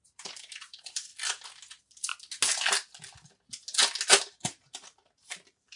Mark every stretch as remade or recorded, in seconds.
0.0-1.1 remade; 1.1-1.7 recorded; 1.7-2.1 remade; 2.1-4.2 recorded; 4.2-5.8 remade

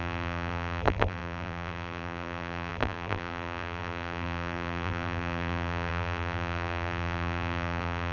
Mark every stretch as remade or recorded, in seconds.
0.0-8.1 remade

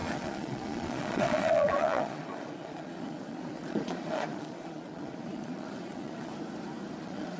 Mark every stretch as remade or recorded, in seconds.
0.0-6.3 remade; 6.3-7.0 recorded; 7.0-7.4 remade

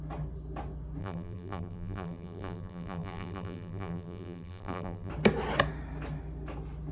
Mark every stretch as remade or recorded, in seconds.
0.0-1.0 recorded; 1.0-5.1 remade; 5.1-6.9 recorded